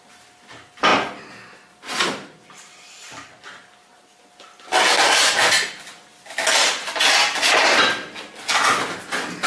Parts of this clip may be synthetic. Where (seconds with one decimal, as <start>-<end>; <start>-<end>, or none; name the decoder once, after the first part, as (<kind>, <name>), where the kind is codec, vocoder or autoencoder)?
none